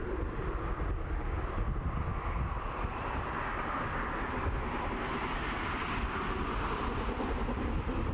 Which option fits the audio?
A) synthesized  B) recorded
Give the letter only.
B